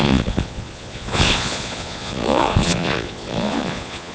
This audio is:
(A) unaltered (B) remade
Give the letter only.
B